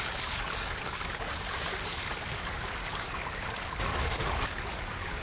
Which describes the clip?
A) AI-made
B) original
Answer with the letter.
A